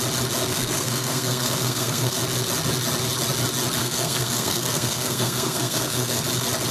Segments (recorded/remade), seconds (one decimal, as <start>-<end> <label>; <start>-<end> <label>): 0.0-0.5 recorded; 0.5-2.2 remade; 2.2-3.8 recorded; 3.8-6.2 remade; 6.2-6.7 recorded